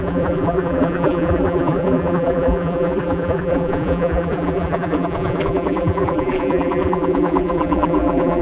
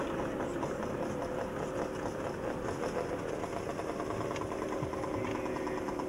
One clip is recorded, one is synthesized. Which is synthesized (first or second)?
first